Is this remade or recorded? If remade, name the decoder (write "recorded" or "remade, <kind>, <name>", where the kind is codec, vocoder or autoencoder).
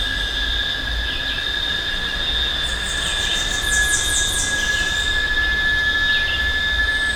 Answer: recorded